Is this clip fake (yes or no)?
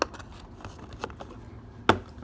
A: no